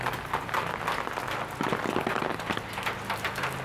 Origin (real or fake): real